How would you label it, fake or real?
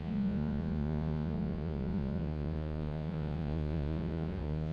fake